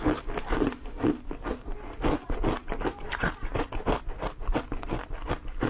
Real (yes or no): yes